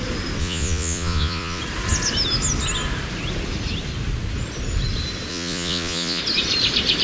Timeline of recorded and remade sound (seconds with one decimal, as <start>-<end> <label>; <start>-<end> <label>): 0.0-0.4 recorded; 0.4-1.6 remade; 1.6-5.3 recorded; 5.3-6.2 remade; 6.2-7.0 recorded